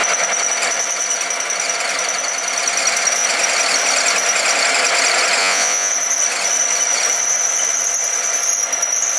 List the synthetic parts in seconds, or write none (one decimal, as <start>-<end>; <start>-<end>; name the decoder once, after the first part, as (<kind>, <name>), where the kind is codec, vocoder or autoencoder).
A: 5.4-5.9 (vocoder, Vocos)

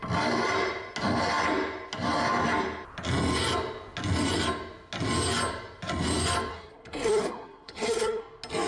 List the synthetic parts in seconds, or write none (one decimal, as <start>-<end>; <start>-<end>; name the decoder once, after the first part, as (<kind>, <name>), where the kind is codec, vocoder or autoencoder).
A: 6.5-8.2 (codec, SNAC)

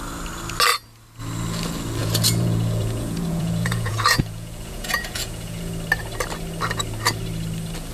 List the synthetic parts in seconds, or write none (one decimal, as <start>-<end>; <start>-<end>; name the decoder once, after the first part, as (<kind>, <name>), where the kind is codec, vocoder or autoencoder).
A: 2.0-5.7 (vocoder, Vocos)